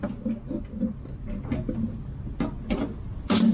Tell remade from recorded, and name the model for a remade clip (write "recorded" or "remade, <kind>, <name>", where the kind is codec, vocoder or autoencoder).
recorded